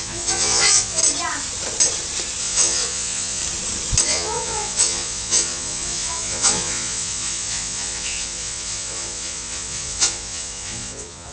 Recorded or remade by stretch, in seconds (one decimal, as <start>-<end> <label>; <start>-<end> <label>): 0.0-1.0 remade; 1.0-2.4 recorded; 2.4-3.4 remade; 3.4-4.0 recorded; 4.0-11.3 remade